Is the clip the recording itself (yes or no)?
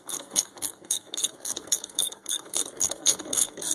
no